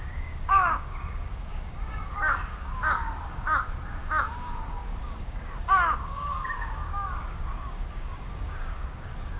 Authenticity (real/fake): fake